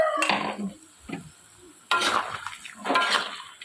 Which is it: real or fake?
real